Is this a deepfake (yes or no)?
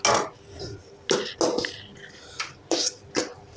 no